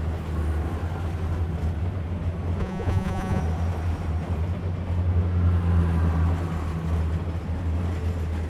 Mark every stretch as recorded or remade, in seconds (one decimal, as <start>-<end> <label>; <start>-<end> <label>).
0.0-2.6 recorded; 2.6-3.4 remade; 3.4-8.5 recorded